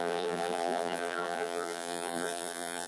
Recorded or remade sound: remade